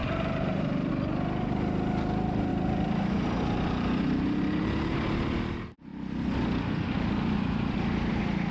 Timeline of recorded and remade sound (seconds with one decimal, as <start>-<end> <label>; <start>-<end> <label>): 0.0-0.9 remade; 0.9-8.5 recorded